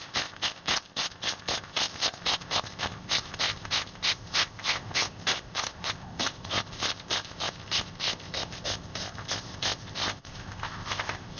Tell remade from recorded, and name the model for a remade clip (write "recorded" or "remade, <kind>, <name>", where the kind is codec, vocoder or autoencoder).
remade, codec, ZipCodec